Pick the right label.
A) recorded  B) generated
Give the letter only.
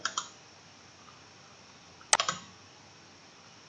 A